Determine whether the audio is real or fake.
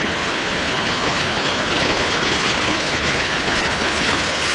fake